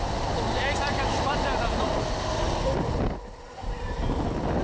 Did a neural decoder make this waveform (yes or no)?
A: yes